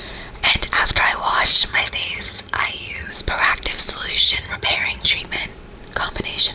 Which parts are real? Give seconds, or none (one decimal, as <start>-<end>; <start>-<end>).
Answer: 0.0-1.7; 3.1-4.2; 5.2-6.5